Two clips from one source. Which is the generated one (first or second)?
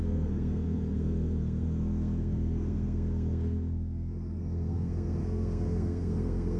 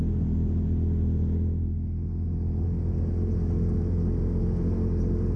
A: first